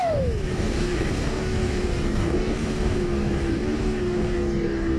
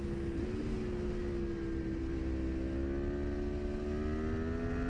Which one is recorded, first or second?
second